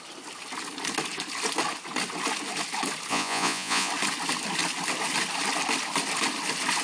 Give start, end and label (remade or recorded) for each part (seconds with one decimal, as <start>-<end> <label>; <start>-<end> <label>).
0.0-3.1 recorded; 3.1-3.9 remade; 3.9-6.8 recorded